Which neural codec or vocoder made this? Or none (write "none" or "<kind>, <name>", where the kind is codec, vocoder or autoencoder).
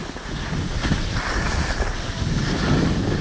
none